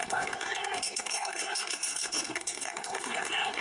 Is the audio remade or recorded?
remade